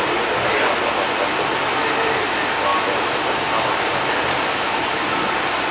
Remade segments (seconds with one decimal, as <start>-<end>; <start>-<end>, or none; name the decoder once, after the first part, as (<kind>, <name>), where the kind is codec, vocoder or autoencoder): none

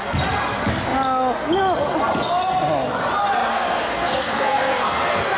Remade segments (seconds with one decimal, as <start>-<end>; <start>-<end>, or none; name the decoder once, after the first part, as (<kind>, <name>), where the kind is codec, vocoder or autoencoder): 3.5-5.4 (codec, SNAC)

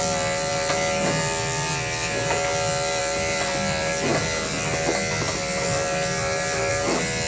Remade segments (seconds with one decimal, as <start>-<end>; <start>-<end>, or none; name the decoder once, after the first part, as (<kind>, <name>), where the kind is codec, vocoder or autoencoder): none